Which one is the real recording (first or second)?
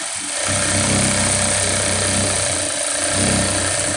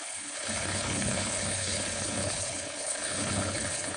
first